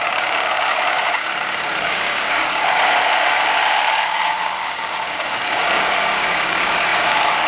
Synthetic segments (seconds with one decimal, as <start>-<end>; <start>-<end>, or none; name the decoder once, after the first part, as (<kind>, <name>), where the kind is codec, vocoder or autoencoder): 0.0-7.5 (codec, DAC)